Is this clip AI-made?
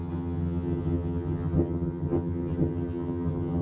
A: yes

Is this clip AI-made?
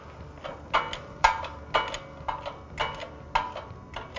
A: no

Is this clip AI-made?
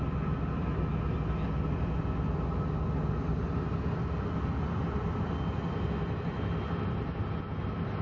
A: no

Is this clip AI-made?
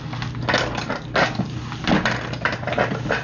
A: no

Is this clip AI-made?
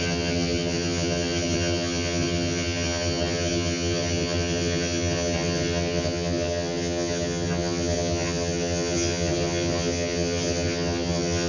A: yes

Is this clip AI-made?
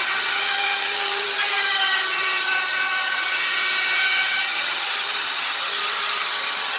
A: yes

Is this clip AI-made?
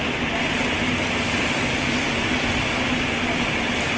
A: no